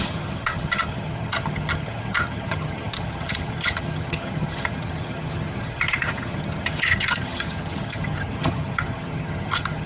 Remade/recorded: remade